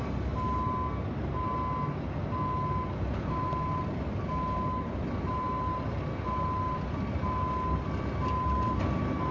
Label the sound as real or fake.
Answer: real